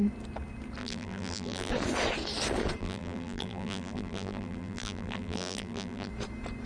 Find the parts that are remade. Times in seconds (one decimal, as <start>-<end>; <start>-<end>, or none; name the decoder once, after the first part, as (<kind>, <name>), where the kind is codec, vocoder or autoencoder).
0.8-1.7 (vocoder, BigVGAN v2); 2.8-6.1